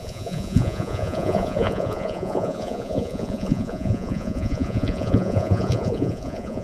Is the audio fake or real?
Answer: fake